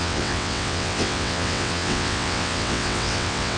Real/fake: fake